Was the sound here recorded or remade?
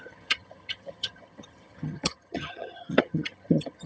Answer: remade